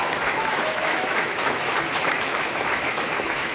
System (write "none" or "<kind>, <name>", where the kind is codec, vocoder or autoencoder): autoencoder, DAC-VAE